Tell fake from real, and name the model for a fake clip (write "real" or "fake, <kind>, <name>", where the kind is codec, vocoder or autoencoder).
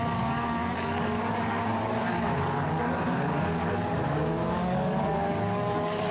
fake, codec, DAC